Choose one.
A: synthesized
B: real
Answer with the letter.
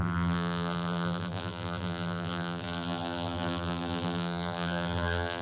A